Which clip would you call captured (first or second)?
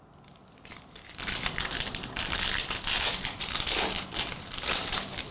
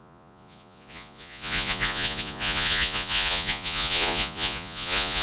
first